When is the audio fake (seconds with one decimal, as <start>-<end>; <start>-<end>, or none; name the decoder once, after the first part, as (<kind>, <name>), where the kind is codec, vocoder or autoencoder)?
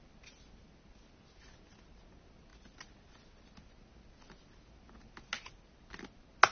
none